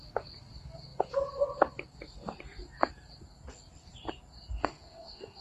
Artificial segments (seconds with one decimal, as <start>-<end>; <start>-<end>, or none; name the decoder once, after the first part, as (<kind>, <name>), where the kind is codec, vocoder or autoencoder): 4.6-5.4 (autoencoder, DAC-VAE)